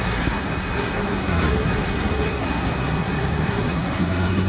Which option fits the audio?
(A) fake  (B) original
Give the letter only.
A